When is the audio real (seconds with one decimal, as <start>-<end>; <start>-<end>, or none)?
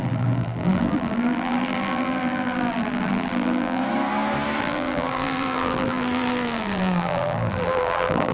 3.8-4.6